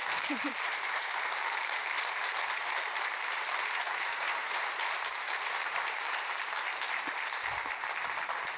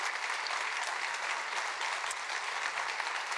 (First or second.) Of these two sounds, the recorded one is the second